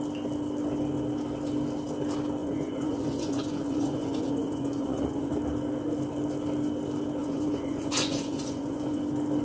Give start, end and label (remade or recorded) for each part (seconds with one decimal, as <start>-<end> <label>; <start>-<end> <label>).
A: 0.0-2.4 recorded; 2.4-5.3 remade; 5.3-7.2 recorded; 7.2-9.0 remade; 9.0-9.4 recorded